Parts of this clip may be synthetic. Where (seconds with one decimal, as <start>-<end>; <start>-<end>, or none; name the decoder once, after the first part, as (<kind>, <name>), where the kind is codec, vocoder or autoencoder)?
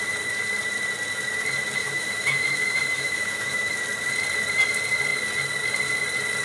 1.8-3.7 (autoencoder, DAC-VAE)